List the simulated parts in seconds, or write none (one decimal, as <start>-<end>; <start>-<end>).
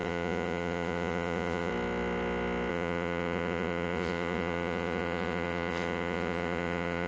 0.0-1.7; 2.7-7.1